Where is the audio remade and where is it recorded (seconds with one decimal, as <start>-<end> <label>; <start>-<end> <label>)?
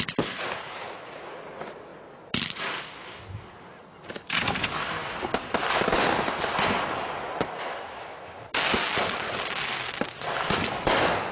0.0-11.3 recorded